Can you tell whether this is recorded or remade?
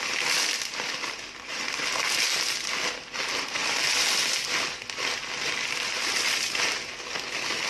recorded